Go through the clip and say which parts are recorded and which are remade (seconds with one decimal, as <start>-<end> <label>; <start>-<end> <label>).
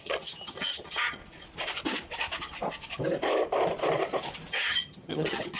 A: 0.0-1.2 remade; 1.2-4.5 recorded; 4.5-5.6 remade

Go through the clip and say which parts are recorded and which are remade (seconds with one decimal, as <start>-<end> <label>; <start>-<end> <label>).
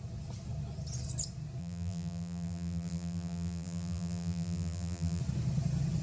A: 0.0-1.6 recorded; 1.6-5.2 remade; 5.2-6.0 recorded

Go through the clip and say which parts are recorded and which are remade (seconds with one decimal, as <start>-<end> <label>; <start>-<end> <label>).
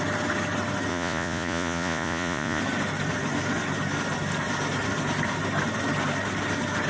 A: 0.0-0.9 recorded; 0.9-2.6 remade; 2.6-6.9 recorded